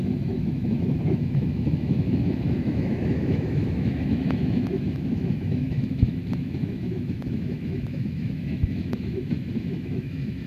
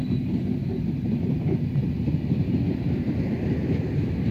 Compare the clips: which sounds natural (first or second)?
second